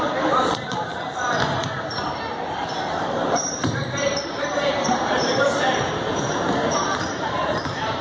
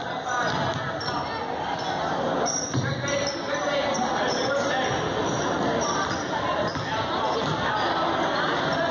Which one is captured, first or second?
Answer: second